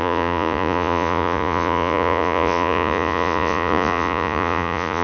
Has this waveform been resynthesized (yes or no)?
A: yes